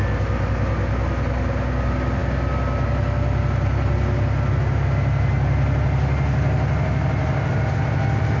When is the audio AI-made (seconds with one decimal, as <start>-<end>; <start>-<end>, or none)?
none